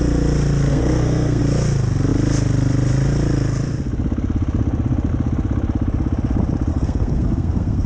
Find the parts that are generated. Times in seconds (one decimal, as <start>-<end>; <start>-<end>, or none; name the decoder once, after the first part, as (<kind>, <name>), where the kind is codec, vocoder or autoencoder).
0.7-1.4 (codec, SNAC); 6.7-7.9